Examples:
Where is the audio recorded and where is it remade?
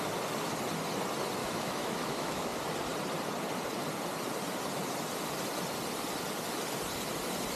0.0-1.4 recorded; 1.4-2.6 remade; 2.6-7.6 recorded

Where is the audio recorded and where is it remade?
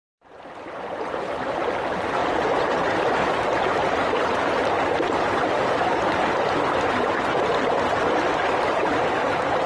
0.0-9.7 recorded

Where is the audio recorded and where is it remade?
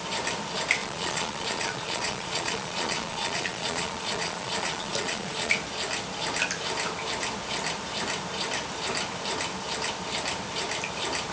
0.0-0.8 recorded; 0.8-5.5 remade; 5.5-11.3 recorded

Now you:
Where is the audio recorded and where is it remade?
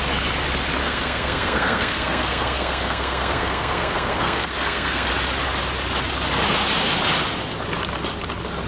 0.0-0.8 recorded; 0.8-5.1 remade; 5.1-8.7 recorded